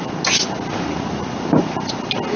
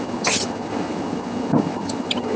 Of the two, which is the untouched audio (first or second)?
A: first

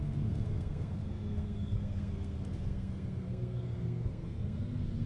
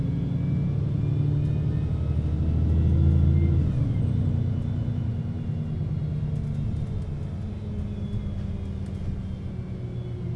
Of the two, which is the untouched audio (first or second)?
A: second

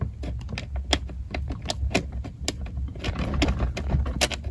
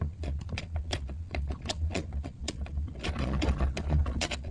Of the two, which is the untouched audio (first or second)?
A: first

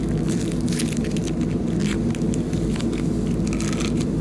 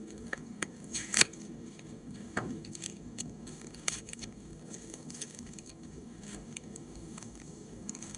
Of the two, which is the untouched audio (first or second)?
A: first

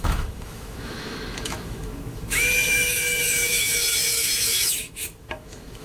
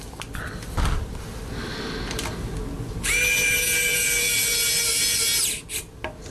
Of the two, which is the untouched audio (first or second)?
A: second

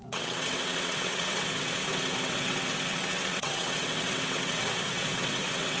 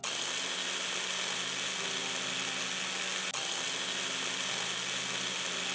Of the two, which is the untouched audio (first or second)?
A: second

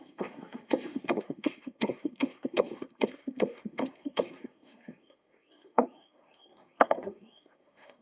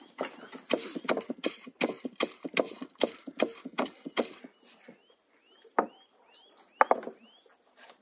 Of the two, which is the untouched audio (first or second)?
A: second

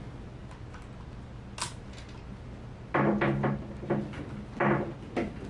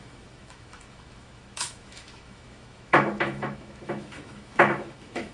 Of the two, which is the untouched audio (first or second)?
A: first